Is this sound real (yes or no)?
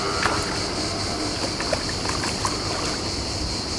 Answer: no